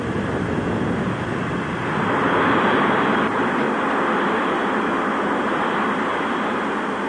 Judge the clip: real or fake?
fake